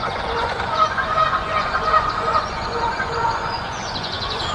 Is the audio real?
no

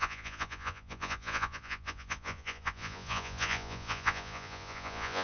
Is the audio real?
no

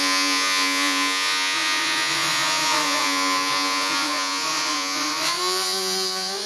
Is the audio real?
no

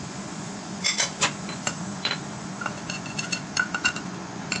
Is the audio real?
no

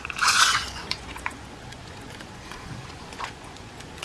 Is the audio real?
no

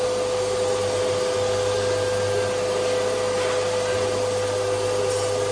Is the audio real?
yes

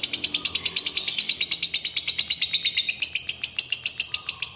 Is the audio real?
yes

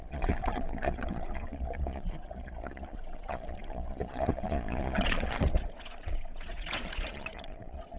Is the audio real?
no